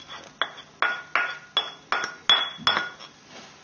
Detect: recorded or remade recorded